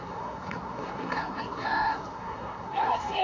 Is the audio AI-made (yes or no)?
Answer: yes